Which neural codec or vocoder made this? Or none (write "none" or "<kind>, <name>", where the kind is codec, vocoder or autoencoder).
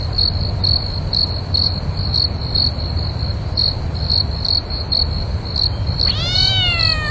none